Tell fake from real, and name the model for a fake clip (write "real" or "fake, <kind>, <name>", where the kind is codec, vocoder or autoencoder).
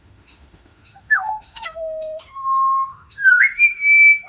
fake, autoencoder, DAC-VAE